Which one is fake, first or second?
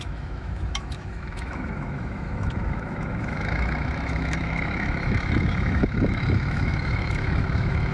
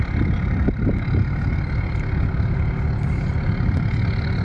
first